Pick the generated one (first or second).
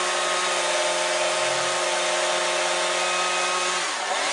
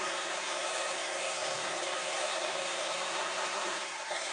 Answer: second